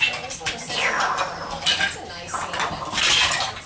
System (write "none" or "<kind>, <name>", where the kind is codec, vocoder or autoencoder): none